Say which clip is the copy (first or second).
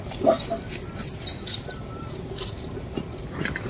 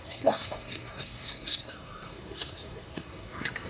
second